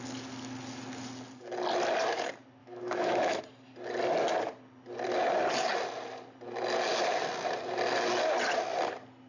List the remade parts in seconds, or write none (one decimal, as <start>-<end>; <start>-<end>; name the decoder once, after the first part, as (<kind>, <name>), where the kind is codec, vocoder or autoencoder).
2.6-3.4 (autoencoder, DAC-VAE)